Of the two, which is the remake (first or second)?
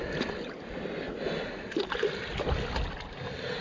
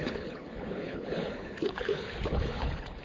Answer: second